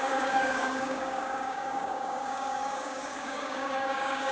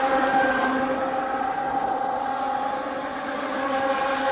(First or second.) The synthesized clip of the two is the first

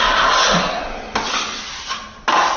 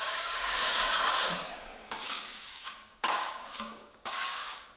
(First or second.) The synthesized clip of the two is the second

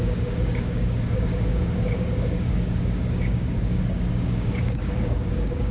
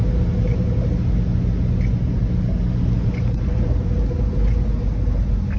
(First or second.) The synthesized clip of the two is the first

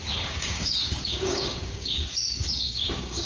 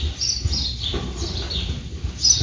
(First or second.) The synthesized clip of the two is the first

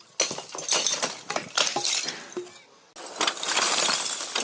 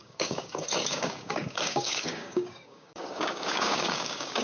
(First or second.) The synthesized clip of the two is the second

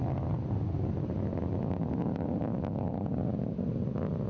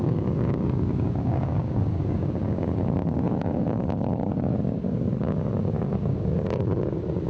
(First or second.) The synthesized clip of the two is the second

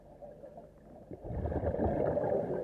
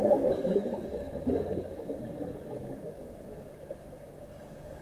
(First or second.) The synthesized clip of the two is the second